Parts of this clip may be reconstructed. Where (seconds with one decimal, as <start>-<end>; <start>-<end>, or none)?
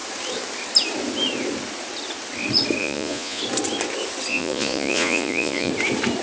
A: 2.8-3.4; 4.3-5.7